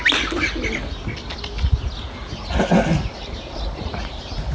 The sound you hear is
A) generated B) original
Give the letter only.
B